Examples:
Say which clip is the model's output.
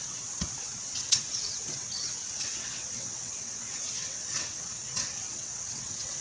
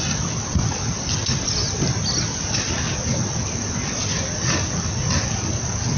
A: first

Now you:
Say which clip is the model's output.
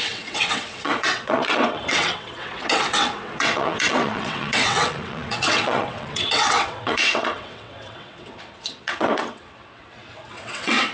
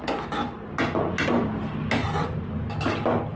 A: first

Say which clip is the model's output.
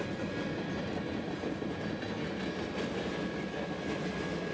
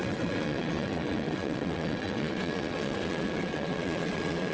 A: second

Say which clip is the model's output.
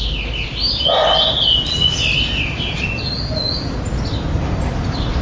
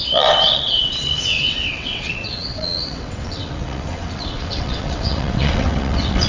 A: second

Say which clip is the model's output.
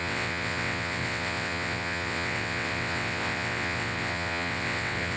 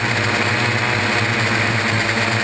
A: first